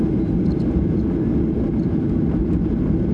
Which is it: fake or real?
real